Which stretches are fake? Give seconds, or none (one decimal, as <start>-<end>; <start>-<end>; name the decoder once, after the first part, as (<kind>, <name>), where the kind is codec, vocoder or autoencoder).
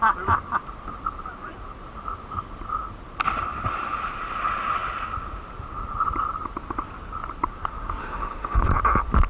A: 8.0-8.7 (autoencoder, DAC-VAE)